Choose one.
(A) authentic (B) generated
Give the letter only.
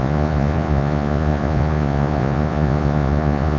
B